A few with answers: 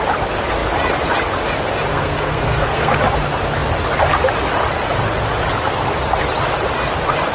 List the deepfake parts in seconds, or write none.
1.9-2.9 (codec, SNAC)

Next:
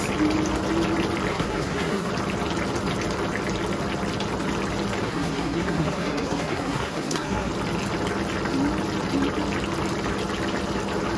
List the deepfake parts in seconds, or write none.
1.3-2.1 (codec, SNAC); 5.0-7.5